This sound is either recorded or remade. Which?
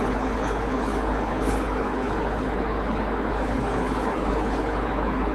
remade